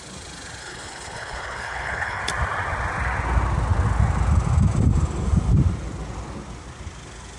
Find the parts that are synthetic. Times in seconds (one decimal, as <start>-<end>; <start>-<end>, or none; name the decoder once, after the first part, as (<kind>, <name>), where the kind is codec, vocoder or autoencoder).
0.6-2.2 (codec, HILCodec)